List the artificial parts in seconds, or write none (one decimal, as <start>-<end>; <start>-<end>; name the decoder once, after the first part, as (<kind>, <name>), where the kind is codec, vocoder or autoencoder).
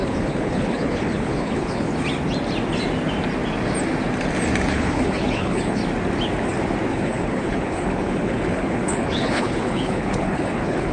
0.0-1.9 (codec, HILCodec); 4.7-5.8; 6.9-10.9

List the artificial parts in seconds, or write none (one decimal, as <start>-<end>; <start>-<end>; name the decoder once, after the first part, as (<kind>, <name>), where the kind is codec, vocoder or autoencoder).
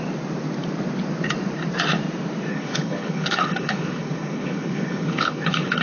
2.5-5.8 (codec, HILCodec)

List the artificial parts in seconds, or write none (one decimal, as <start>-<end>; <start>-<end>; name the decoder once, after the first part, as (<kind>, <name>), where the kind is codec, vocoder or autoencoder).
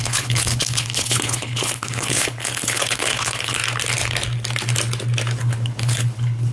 0.0-3.6 (codec, HILCodec); 5.4-6.5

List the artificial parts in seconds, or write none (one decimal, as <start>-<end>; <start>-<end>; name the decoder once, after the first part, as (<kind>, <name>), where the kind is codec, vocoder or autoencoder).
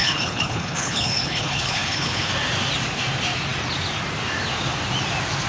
0.0-2.3 (codec, HILCodec)